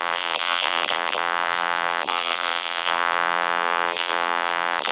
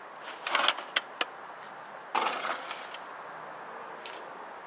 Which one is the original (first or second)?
second